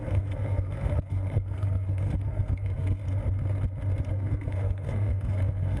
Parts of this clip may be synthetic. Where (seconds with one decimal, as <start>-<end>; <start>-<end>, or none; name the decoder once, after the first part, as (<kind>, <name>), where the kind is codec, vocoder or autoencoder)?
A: 0.0-3.0 (codec, SNAC); 4.1-5.8